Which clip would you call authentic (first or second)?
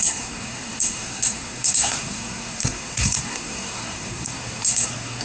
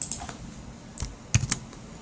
second